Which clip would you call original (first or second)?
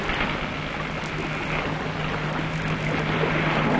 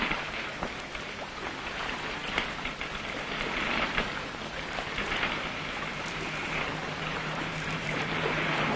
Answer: first